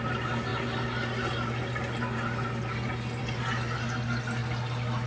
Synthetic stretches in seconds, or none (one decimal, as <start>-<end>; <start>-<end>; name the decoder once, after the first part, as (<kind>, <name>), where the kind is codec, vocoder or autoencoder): none